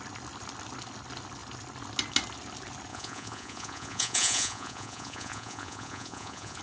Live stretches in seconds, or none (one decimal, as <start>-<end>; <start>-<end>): 0.0-2.9